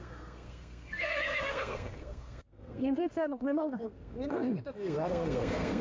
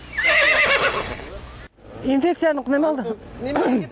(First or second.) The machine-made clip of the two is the first